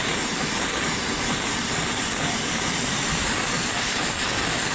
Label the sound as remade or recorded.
recorded